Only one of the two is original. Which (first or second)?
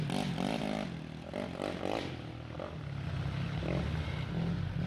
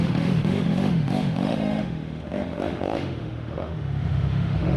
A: first